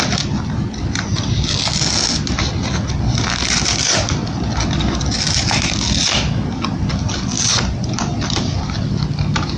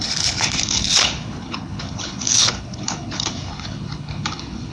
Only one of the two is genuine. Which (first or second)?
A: first